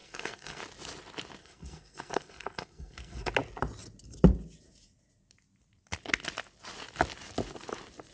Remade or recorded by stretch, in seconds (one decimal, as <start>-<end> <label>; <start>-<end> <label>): 0.0-0.6 remade; 0.6-1.4 recorded; 1.4-3.3 remade; 3.3-8.1 recorded